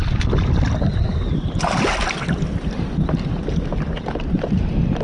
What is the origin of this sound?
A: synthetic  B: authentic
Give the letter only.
B